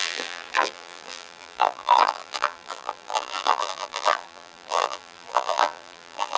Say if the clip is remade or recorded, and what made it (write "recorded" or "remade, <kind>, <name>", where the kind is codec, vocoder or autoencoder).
remade, vocoder, BigVGAN v2